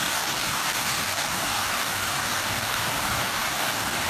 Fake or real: fake